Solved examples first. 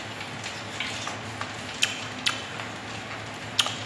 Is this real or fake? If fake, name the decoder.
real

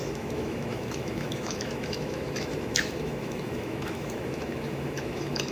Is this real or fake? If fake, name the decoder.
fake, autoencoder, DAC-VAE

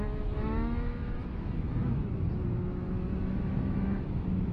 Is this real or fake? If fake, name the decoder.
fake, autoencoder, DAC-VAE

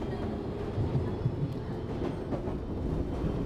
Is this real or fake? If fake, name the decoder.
real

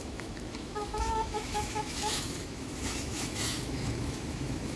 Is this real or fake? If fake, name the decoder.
fake, autoencoder, DAC-VAE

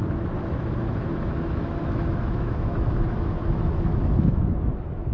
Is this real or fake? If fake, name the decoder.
fake, autoencoder, DAC-VAE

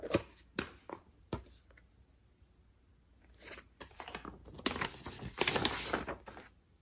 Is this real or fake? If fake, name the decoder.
real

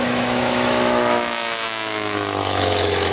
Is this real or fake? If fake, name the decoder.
fake, autoencoder, DAC-VAE